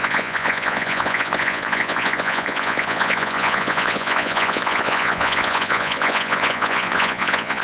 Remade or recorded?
remade